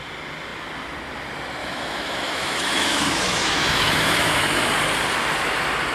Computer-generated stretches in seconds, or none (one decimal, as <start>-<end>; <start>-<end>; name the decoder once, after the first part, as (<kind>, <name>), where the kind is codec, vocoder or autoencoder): 1.6-4.7 (autoencoder, DAC-VAE)